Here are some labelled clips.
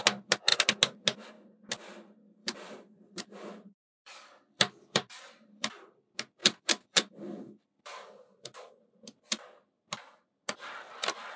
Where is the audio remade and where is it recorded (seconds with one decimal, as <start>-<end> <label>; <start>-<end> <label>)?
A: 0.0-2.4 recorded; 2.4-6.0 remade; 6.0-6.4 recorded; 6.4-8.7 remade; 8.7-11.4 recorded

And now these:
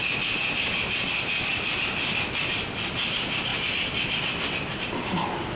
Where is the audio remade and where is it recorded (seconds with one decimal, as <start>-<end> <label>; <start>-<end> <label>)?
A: 0.0-3.5 recorded; 3.5-4.2 remade; 4.2-5.6 recorded

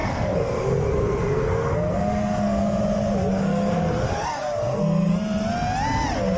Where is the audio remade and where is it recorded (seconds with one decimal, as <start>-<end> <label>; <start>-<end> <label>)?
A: 0.0-2.8 remade; 2.8-3.3 recorded; 3.3-5.1 remade; 5.1-6.4 recorded